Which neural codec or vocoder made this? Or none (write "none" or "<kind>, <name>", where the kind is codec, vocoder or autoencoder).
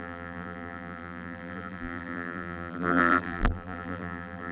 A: vocoder, BigVGAN v2